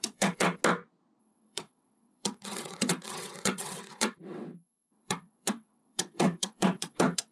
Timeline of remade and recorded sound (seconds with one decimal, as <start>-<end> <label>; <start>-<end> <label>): 0.0-0.6 remade; 0.6-1.2 recorded; 1.2-7.3 remade